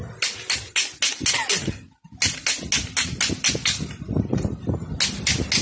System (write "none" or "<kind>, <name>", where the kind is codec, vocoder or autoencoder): none